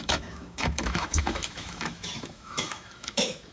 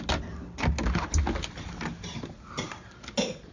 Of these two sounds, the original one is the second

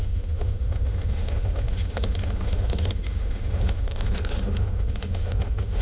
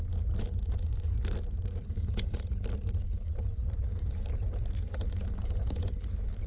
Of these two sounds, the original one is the second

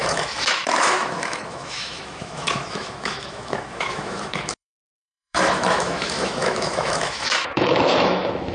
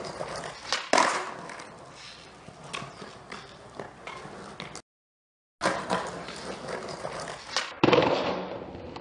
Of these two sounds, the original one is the second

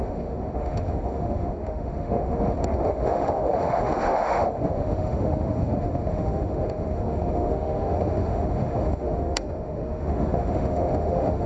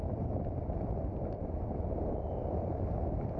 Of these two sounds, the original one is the second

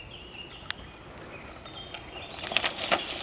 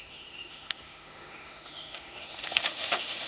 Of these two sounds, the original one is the first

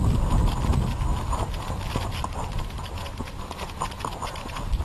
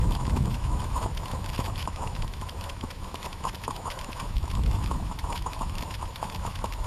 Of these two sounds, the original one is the first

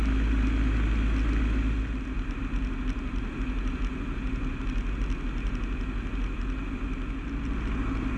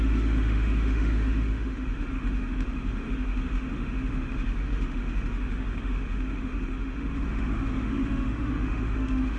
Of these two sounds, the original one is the first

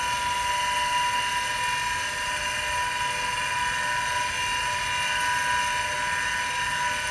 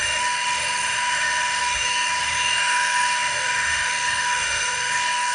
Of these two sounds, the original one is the first